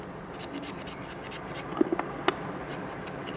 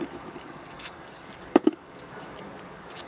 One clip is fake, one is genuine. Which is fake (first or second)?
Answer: second